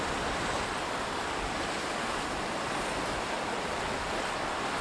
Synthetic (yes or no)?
no